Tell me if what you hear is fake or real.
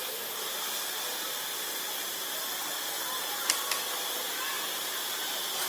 real